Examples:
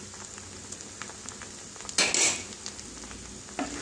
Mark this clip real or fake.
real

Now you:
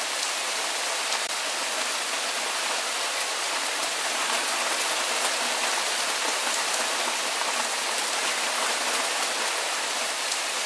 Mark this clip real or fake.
fake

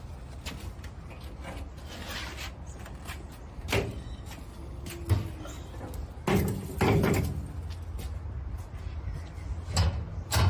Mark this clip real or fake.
real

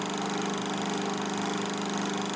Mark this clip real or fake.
real